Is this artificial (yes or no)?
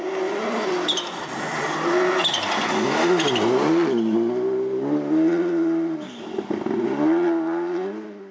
no